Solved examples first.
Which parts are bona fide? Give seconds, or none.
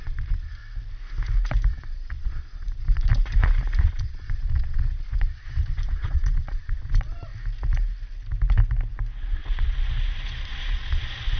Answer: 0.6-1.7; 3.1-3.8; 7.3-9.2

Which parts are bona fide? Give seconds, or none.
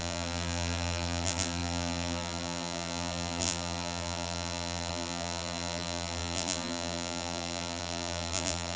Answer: none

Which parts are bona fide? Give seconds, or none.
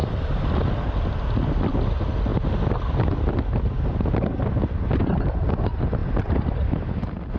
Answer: 0.8-6.0